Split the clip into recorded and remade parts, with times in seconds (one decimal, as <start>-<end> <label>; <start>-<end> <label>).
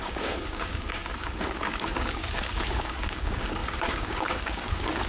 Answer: 0.0-5.1 remade